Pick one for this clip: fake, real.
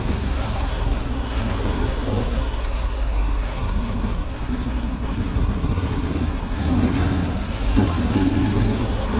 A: fake